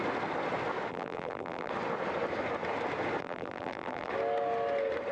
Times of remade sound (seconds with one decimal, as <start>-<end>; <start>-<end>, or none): 0.9-1.7; 3.2-4.1